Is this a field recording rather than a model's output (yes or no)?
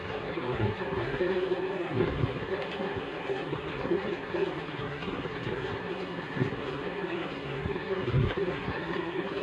no